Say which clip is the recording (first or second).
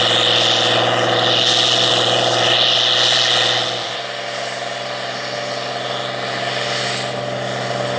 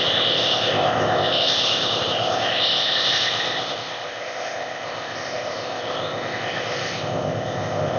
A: first